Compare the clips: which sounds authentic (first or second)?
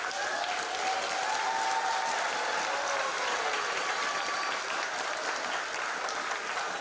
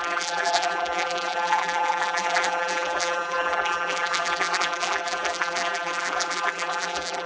first